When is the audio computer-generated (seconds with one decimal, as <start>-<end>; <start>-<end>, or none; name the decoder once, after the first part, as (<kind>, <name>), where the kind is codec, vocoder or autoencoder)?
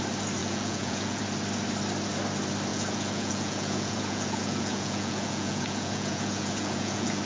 0.4-1.2 (vocoder, Vocos); 2.7-7.3